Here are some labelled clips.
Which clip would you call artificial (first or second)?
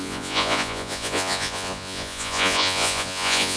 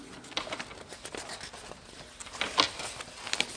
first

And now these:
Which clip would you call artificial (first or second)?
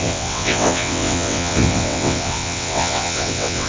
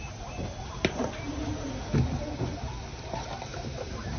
first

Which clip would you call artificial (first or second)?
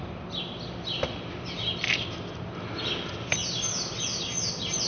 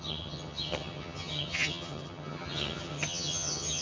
second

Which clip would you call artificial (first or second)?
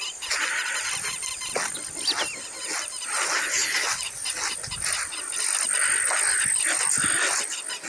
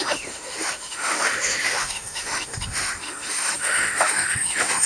second